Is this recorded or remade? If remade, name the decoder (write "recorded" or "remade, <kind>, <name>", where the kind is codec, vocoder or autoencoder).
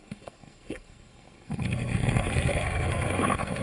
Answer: remade, codec, SNAC